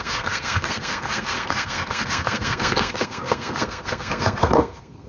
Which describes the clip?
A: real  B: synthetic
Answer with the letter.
B